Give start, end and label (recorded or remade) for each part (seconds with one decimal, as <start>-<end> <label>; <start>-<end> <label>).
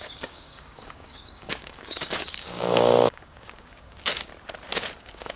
0.0-4.3 remade; 4.3-5.0 recorded; 5.0-5.4 remade